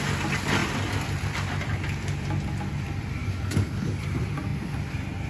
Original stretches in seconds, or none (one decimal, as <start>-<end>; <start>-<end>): 0.0-3.2; 4.0-5.3

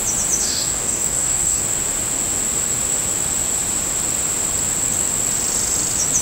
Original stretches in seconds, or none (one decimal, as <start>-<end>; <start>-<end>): 0.0-0.4; 1.6-6.2

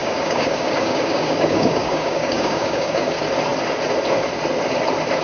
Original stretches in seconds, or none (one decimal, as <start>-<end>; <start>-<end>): 3.1-5.2

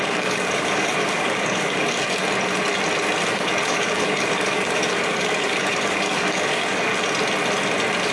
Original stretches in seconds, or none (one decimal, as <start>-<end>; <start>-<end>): 2.2-3.3; 6.9-8.1

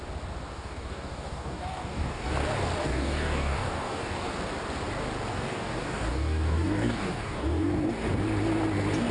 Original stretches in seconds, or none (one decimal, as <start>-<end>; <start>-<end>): 0.0-0.5; 2.3-2.8; 4.3-5.3; 7.7-9.1

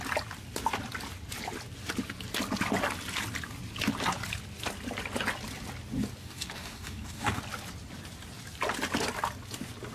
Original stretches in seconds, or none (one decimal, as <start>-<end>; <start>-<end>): 0.0-6.2; 7.4-9.9

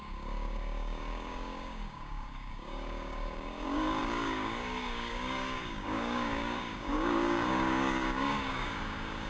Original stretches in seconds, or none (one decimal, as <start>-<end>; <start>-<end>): none

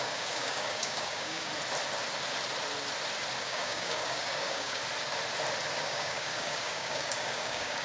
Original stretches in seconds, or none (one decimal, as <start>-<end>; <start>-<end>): 1.5-3.4; 4.8-5.8